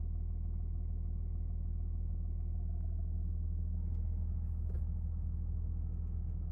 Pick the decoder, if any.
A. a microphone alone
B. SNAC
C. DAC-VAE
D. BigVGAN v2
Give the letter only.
A